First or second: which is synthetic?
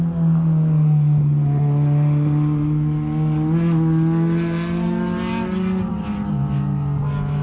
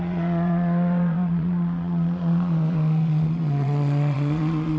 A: second